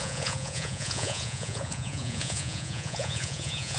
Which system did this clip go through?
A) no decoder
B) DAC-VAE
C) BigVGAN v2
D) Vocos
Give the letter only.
D